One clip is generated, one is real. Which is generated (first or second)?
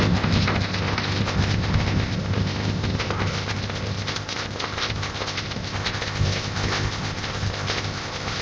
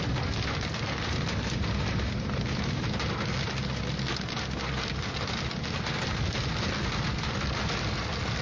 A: first